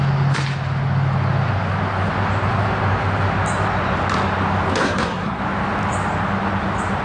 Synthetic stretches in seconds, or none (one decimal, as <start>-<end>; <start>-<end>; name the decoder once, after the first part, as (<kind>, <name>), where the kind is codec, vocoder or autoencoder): 4.8-5.4 (codec, SNAC)